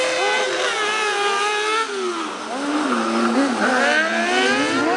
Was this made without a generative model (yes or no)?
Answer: yes